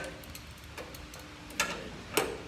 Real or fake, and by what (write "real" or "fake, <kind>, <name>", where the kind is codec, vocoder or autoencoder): real